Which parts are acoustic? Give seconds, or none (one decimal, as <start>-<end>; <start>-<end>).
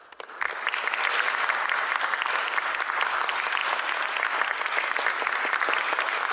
0.0-6.3